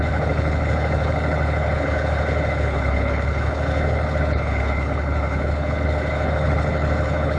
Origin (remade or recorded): remade